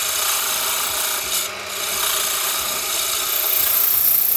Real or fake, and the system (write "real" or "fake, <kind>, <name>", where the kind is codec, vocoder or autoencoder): real